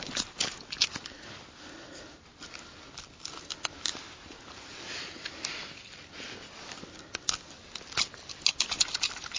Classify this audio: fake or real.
real